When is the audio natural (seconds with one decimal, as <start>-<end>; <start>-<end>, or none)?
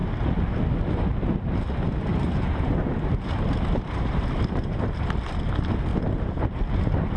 0.0-2.1; 4.8-5.9; 6.6-7.2